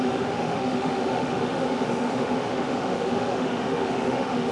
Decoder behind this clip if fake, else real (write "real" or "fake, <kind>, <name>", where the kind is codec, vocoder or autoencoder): fake, autoencoder, DAC-VAE